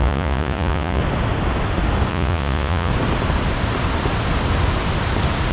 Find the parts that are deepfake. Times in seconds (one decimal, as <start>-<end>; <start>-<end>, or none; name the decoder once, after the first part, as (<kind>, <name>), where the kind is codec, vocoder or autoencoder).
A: 0.0-1.0 (vocoder, Vocos); 2.1-2.9